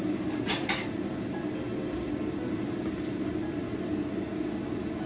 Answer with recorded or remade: recorded